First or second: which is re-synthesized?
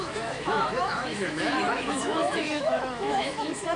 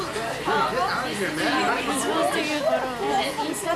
first